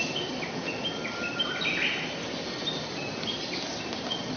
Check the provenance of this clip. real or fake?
real